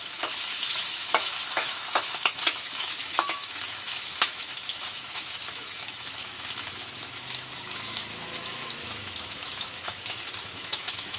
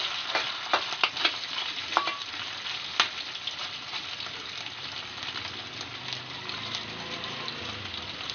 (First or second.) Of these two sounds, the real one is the second